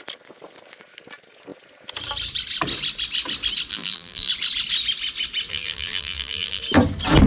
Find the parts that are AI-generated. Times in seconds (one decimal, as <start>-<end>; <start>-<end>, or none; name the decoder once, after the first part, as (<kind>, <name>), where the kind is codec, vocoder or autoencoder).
3.7-4.3 (vocoder, BigVGAN v2); 5.5-6.6